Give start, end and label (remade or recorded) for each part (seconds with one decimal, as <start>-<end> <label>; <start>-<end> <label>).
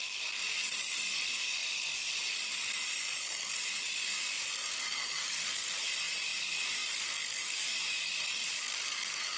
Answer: 0.0-9.4 recorded